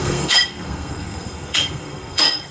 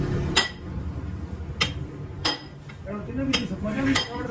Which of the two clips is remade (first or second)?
first